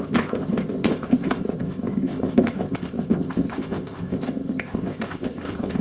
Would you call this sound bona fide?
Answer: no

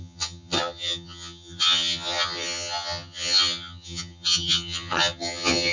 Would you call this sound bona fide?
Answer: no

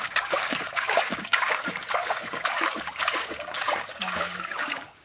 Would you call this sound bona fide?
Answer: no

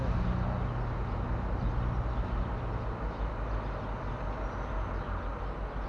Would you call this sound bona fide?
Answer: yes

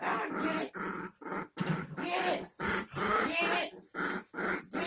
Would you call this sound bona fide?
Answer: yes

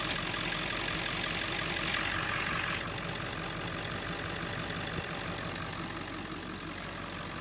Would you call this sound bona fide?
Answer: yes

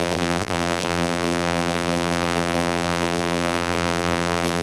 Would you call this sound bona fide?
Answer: no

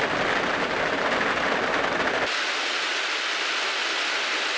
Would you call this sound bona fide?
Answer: yes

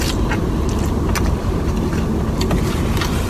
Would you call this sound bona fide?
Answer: yes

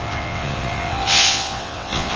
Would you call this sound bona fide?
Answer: no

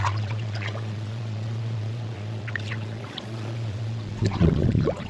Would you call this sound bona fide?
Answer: no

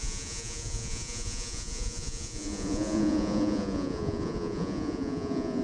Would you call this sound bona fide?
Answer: no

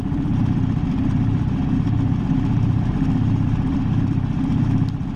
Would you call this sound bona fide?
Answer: no